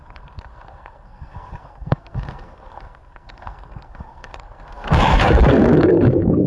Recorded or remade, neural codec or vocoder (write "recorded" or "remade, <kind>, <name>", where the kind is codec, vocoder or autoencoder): remade, codec, SNAC